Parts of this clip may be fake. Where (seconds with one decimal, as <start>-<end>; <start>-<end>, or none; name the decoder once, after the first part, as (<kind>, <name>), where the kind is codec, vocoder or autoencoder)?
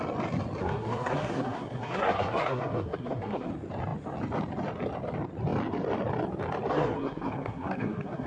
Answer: 0.6-3.5 (codec, SNAC); 6.7-8.3